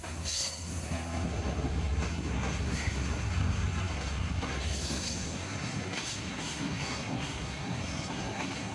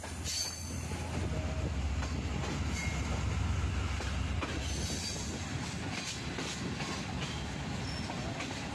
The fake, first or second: first